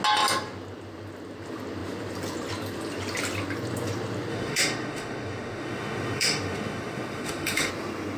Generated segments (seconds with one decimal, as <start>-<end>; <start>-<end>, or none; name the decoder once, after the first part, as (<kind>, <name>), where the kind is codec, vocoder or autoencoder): 4.3-7.7 (autoencoder, DAC-VAE)